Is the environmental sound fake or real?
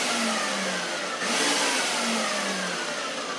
real